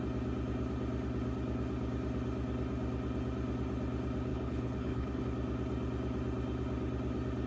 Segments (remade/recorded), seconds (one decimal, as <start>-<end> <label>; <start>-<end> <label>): 0.0-4.3 recorded; 4.3-5.2 remade; 5.2-7.5 recorded